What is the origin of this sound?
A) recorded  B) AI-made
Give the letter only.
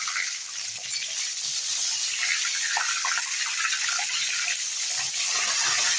A